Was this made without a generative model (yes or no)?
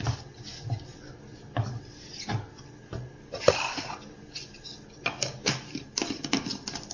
yes